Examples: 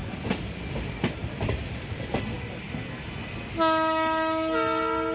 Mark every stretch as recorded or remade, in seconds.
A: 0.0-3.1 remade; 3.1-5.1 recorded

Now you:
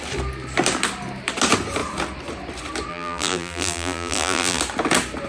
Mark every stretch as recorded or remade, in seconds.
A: 0.0-2.9 recorded; 2.9-4.6 remade; 4.6-5.3 recorded

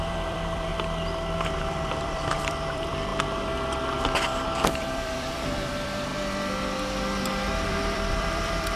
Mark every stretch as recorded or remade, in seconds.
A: 0.0-0.7 remade; 0.7-1.6 recorded; 1.6-3.1 remade; 3.1-4.7 recorded; 4.7-6.1 remade; 6.1-7.7 recorded; 7.7-8.8 remade